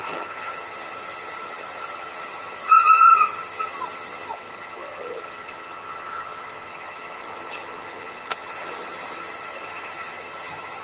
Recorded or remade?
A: remade